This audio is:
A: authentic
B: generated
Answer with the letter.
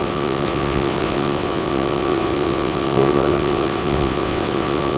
B